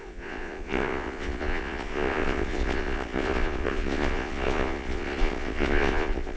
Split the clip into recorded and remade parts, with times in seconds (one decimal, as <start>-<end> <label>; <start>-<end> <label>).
0.0-6.4 remade